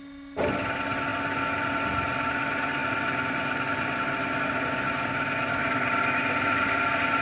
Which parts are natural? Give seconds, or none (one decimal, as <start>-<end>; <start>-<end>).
0.0-7.2